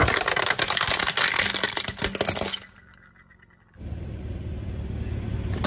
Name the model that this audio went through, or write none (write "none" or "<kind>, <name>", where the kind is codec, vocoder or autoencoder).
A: none